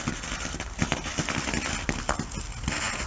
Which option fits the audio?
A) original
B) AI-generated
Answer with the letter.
A